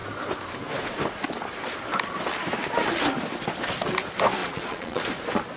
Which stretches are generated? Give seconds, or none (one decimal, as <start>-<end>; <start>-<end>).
4.4-5.0